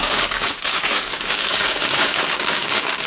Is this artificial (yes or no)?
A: yes